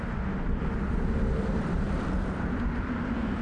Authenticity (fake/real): real